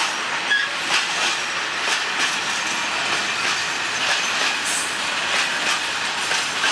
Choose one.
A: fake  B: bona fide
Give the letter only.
B